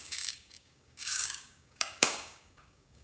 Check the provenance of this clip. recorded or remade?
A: remade